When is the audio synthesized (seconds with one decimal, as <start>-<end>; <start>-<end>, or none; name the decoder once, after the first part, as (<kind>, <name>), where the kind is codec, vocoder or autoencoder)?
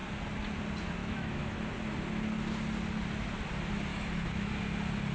1.0-1.6 (autoencoder, DAC-VAE); 3.9-4.5